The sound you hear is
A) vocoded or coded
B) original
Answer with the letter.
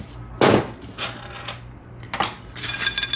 B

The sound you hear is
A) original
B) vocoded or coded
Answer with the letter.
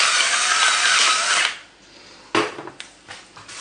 A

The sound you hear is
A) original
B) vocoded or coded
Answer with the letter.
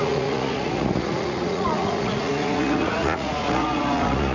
B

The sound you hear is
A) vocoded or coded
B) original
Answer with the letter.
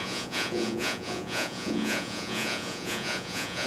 A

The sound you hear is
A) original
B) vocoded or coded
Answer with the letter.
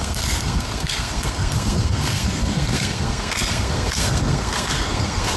B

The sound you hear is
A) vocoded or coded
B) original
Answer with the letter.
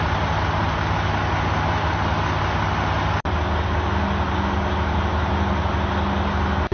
B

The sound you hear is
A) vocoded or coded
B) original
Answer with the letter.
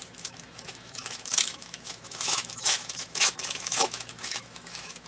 A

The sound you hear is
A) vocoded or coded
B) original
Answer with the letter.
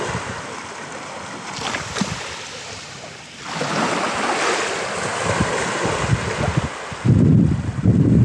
B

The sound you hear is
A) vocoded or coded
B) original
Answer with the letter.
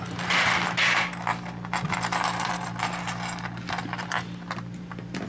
B